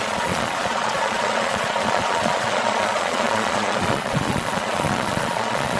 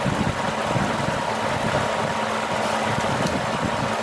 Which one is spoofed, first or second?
first